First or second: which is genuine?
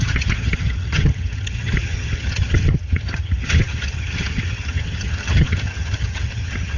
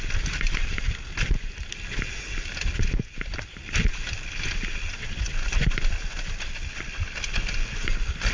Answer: second